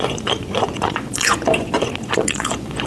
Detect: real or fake fake